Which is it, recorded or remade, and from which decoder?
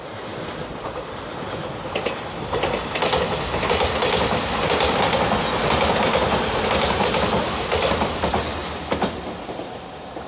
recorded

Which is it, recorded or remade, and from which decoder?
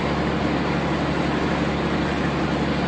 recorded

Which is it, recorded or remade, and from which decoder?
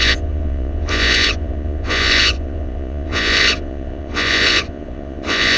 remade, vocoder, Vocos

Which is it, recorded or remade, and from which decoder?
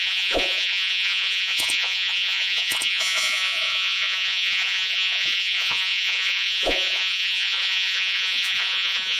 remade, vocoder, Vocos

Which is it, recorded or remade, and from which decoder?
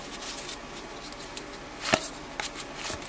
recorded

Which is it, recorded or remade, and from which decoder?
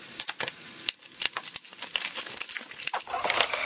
recorded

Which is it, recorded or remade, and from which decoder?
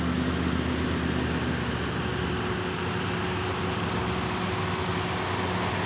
recorded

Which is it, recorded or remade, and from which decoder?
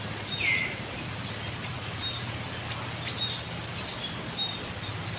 recorded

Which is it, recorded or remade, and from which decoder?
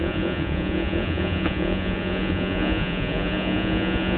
remade, vocoder, Vocos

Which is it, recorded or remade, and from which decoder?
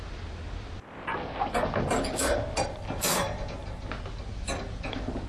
recorded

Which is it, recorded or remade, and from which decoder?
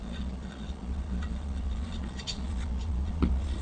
remade, vocoder, Vocos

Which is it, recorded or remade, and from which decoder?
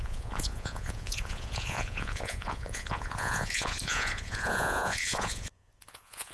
remade, vocoder, Vocos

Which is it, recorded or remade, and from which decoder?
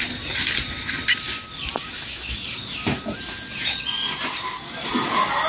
recorded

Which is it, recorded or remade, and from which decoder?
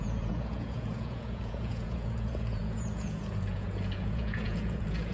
remade, vocoder, Vocos